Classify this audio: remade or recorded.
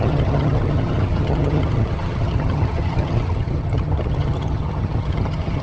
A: remade